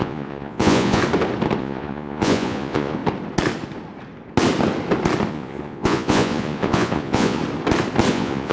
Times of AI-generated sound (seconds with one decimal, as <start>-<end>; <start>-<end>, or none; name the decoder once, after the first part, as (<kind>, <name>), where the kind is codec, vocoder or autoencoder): 0.0-1.0 (vocoder, Vocos); 1.6-3.0; 5.3-7.4; 8.1-8.5